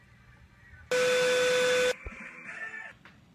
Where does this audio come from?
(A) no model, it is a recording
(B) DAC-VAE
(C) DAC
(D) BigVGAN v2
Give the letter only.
A